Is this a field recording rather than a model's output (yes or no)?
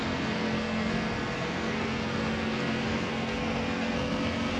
no